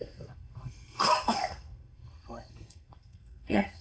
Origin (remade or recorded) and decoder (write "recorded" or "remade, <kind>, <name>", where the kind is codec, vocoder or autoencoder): remade, codec, SNAC